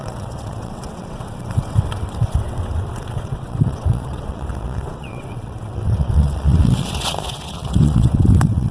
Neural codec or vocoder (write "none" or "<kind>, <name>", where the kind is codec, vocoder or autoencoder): vocoder, WaveNeXt